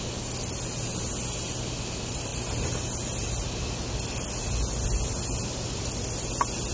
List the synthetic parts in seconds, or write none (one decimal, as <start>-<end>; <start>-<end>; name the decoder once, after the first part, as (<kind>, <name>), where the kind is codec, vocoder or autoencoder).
none